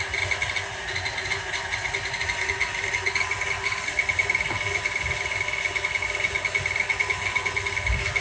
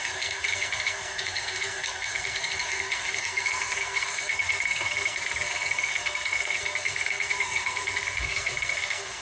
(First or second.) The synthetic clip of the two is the second